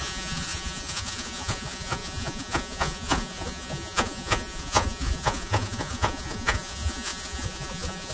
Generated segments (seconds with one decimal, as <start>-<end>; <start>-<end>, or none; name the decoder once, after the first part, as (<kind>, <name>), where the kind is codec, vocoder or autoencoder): 0.0-8.1 (vocoder, Vocos)